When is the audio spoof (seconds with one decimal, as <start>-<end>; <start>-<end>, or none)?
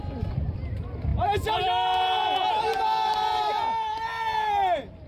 none